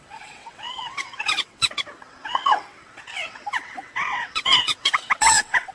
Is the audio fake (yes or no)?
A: yes